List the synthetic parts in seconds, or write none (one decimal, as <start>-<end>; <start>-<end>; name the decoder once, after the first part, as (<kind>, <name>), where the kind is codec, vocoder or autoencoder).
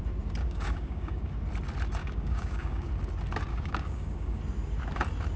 0.4-1.3 (codec, DAC); 2.0-2.9; 3.5-4.4